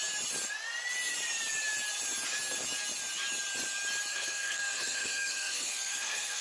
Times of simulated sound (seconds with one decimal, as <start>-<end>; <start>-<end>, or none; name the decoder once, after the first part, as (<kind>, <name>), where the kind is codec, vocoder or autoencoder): 4.1-6.4 (codec, SNAC)